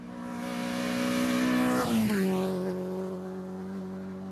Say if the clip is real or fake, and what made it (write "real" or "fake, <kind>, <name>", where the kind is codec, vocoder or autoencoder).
real